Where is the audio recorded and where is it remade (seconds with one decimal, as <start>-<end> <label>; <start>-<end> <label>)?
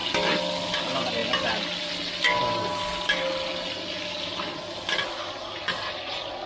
0.0-6.5 recorded